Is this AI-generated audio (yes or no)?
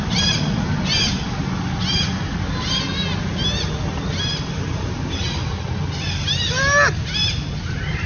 no